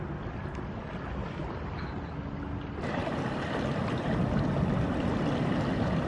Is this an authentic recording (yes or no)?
yes